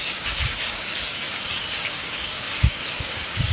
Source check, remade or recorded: remade